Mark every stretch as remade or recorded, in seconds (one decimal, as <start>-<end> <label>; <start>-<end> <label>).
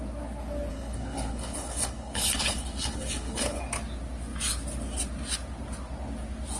0.0-0.7 recorded; 0.7-3.6 remade; 3.6-6.6 recorded